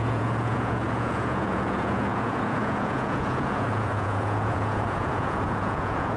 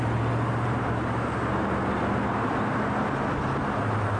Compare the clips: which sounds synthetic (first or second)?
first